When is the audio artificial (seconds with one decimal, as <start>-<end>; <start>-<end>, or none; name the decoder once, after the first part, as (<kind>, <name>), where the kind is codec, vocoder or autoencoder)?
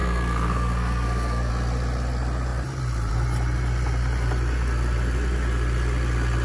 0.0-1.5 (codec, SNAC)